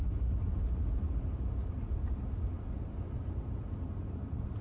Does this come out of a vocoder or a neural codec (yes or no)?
no